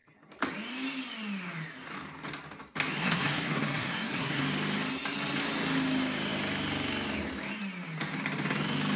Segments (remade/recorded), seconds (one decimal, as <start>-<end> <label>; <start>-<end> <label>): 0.0-3.0 recorded; 3.0-4.4 remade; 4.4-9.0 recorded

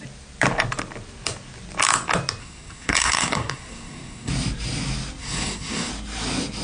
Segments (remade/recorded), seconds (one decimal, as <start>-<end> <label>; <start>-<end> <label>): 0.0-2.4 recorded; 2.4-4.3 remade; 4.3-5.2 recorded; 5.2-5.9 remade; 5.9-6.6 recorded

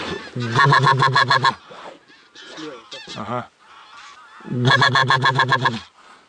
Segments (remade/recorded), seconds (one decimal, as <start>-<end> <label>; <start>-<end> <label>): 0.0-6.3 recorded

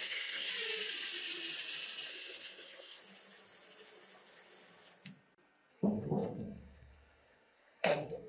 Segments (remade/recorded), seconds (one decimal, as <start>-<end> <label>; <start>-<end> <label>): 0.0-0.5 remade; 0.5-2.1 recorded; 2.1-3.0 remade; 3.0-5.7 recorded; 5.7-8.3 remade

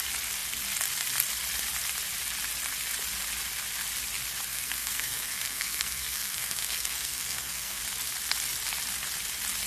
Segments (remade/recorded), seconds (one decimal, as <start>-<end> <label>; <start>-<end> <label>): 0.0-4.5 recorded; 4.5-7.8 remade; 7.8-9.7 recorded